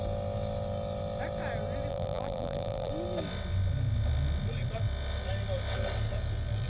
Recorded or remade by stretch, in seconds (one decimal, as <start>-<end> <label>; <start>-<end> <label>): 0.0-1.9 recorded; 1.9-2.9 remade; 2.9-6.7 recorded